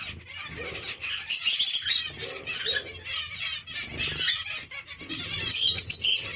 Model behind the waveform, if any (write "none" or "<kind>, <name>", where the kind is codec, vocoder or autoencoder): none